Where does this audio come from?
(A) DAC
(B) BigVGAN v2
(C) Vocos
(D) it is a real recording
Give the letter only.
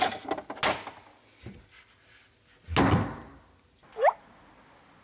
D